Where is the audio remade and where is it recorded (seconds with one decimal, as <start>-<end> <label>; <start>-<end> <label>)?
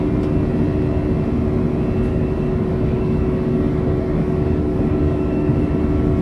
0.0-2.1 recorded; 2.1-5.7 remade; 5.7-6.2 recorded